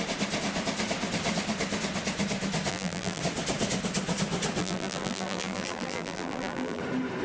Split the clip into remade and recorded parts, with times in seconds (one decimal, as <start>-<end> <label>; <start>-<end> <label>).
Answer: 0.0-2.7 recorded; 2.7-3.2 remade; 3.2-4.6 recorded; 4.6-6.8 remade; 6.8-7.2 recorded